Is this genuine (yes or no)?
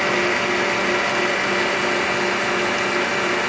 yes